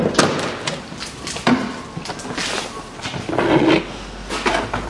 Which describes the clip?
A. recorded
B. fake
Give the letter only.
A